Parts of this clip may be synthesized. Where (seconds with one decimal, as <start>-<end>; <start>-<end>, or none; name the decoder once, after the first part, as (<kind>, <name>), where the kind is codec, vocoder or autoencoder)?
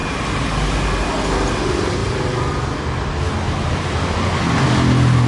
none